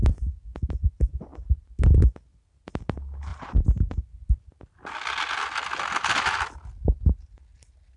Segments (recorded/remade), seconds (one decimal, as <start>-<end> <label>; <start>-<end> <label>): 0.0-3.3 recorded; 3.3-3.8 remade; 3.8-8.0 recorded